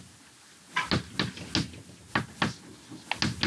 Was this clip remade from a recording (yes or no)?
no